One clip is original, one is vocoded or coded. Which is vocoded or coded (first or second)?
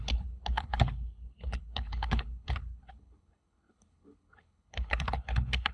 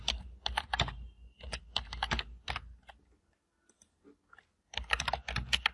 first